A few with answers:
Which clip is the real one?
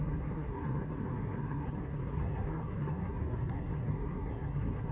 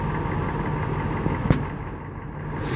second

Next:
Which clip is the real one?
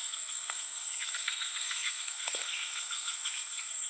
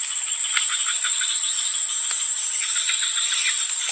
second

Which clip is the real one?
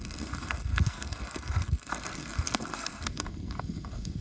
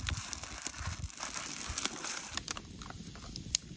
second